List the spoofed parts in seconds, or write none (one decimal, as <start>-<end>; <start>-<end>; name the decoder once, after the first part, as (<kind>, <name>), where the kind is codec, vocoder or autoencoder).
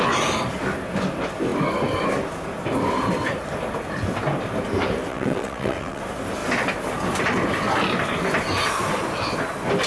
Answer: 5.1-6.0 (vocoder, WaveNeXt)